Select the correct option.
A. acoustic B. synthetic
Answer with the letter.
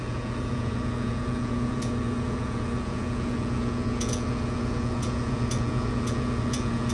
B